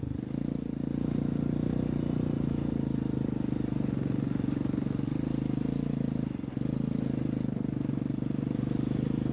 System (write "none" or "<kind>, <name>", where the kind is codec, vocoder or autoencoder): none